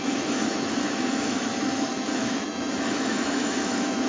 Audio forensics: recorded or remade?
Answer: remade